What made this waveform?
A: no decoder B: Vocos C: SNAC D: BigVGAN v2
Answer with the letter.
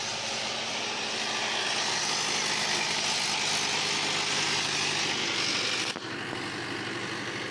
A